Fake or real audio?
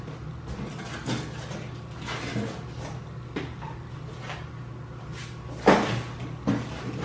real